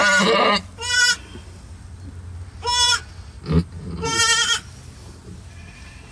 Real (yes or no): yes